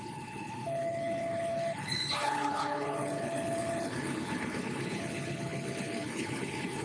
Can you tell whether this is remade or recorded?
remade